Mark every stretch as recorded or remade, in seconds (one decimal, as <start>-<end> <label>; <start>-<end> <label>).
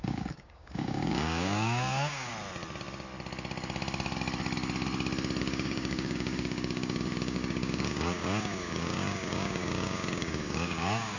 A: 0.0-2.3 remade; 2.3-5.4 recorded; 5.4-11.2 remade